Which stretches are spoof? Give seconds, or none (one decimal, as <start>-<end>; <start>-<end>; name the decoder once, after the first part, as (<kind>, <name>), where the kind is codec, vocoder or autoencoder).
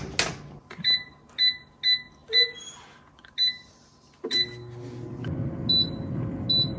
none